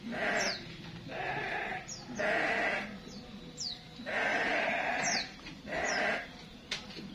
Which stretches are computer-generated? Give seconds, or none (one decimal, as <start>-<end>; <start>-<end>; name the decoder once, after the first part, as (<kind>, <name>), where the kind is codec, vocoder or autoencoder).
4.3-5.9 (vocoder, BigVGAN v2)